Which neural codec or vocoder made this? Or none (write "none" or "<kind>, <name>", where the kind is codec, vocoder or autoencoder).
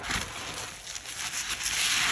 none